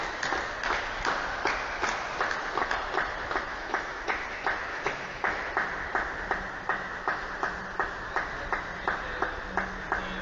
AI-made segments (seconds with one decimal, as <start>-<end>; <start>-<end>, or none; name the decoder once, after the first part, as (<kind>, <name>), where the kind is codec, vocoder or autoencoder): 3.5-4.1 (autoencoder, DAC-VAE); 4.7-5.5